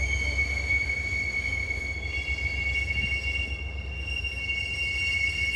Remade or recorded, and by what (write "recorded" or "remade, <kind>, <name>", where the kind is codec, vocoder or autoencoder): recorded